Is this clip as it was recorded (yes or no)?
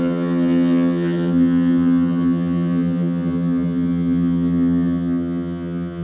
no